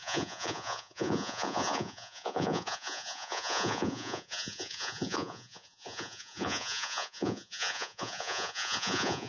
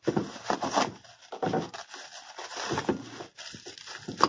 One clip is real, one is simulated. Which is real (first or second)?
second